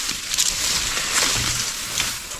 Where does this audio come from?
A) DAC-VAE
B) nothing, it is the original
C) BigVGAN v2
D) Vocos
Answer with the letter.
B